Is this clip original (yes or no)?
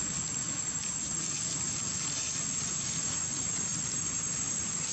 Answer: yes